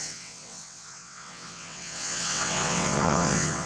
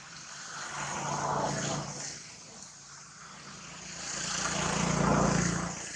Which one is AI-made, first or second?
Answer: first